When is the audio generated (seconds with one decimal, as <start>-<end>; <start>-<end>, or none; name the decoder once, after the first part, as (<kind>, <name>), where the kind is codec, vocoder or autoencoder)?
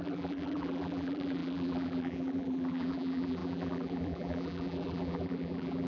0.0-5.9 (vocoder, BigVGAN v2)